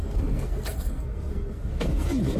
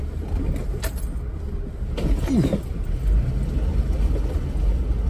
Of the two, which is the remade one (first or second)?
first